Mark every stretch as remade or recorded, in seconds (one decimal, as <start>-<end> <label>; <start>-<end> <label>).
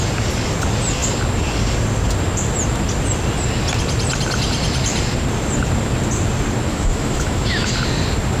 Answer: 0.0-6.7 recorded; 6.7-7.7 remade; 7.7-8.4 recorded